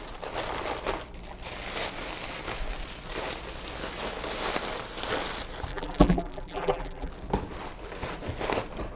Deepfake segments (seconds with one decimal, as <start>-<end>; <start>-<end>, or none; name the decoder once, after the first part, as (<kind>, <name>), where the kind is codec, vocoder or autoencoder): 5.7-7.1 (vocoder, BigVGAN v2)